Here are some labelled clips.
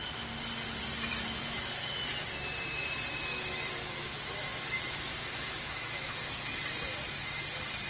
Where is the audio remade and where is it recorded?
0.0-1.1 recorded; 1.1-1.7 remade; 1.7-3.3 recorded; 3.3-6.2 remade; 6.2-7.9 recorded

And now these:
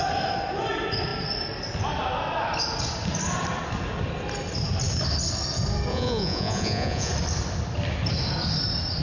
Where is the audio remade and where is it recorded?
0.0-5.9 recorded; 5.9-7.1 remade; 7.1-9.0 recorded

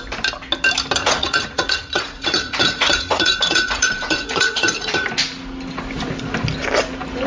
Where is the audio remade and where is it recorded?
0.0-1.0 recorded; 1.0-5.1 remade; 5.1-7.3 recorded

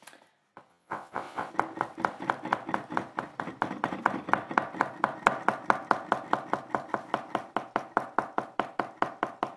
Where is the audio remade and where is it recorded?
0.0-0.7 recorded; 0.7-1.5 remade; 1.5-9.6 recorded